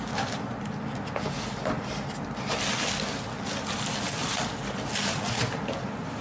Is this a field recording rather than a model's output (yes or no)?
yes